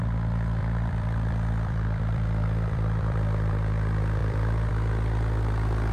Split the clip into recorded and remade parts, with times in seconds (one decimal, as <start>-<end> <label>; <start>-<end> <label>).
0.0-0.6 recorded; 0.6-3.5 remade; 3.5-4.2 recorded; 4.2-4.7 remade; 4.7-5.9 recorded